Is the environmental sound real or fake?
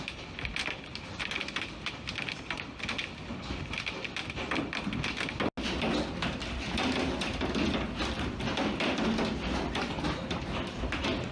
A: real